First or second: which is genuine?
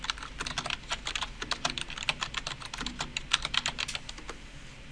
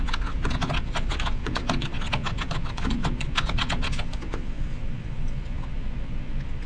first